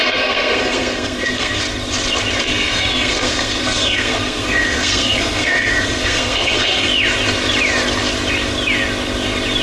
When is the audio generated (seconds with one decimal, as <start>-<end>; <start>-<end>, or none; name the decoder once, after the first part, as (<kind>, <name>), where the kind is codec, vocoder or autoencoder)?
0.0-1.6 (codec, SNAC); 2.4-6.9